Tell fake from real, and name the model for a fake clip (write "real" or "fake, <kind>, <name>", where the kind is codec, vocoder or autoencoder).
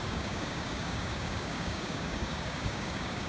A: fake, codec, DAC